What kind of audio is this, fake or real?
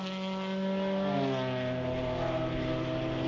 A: real